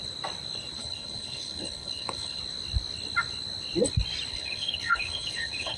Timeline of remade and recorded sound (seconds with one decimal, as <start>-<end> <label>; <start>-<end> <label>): 0.0-0.8 recorded; 0.8-2.4 remade; 2.4-4.3 recorded; 4.3-5.8 remade